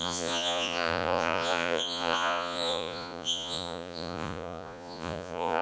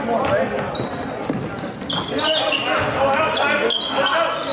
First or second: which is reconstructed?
first